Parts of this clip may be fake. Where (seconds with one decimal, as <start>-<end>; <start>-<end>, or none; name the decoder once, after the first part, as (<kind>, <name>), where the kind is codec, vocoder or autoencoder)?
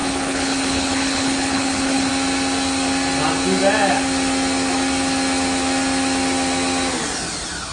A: 0.0-2.1 (codec, HILCodec)